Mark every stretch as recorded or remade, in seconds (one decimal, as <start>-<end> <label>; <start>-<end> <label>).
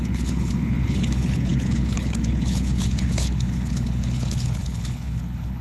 0.0-5.6 remade